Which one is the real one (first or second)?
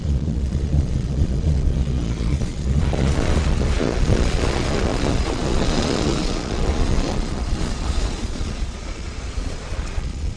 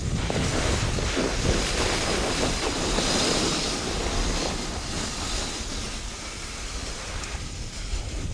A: second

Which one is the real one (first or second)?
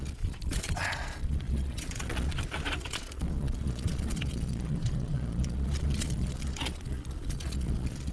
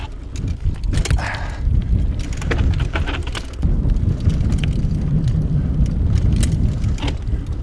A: second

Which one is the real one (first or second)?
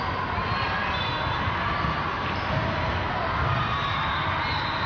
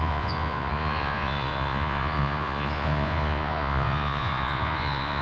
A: first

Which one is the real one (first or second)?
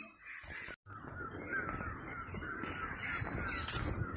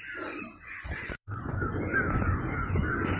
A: first